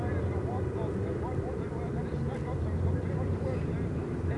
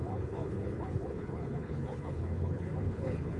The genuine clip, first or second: first